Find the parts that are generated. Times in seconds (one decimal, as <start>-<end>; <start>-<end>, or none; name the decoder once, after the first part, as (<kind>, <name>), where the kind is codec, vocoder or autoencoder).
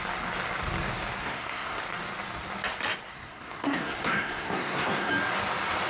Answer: 1.2-1.8 (codec, SNAC); 3.1-5.1